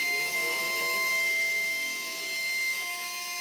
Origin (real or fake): fake